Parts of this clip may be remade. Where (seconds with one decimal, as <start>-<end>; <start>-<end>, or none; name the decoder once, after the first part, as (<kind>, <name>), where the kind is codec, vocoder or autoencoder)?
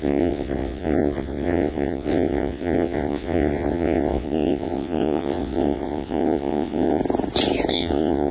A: 0.0-7.0 (vocoder, WaveNeXt); 7.7-8.3